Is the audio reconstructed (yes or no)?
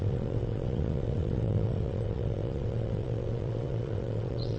yes